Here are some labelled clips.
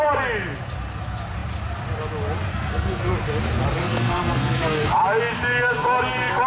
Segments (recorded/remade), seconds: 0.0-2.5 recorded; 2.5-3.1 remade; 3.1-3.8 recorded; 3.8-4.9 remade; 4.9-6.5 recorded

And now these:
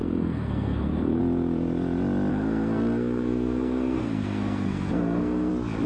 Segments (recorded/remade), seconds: 0.0-1.2 remade; 1.2-2.3 recorded; 2.3-5.5 remade; 5.5-5.9 recorded

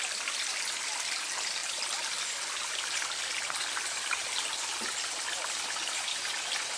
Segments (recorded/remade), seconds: 0.0-6.8 recorded

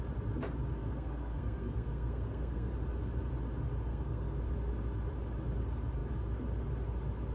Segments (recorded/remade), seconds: 0.0-0.8 recorded; 0.8-2.7 remade; 2.7-3.9 recorded; 3.9-4.4 remade; 4.4-7.3 recorded

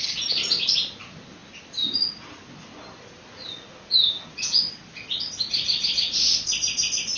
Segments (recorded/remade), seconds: 0.0-7.2 recorded

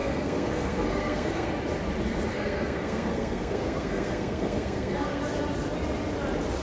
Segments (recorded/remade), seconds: 0.0-1.5 remade; 1.5-2.3 recorded; 2.3-5.2 remade; 5.2-6.6 recorded